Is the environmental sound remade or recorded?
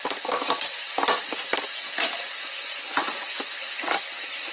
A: recorded